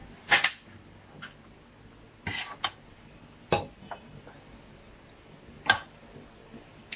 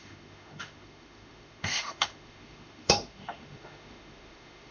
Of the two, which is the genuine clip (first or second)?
first